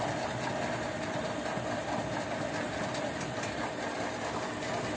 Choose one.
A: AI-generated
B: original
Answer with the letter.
B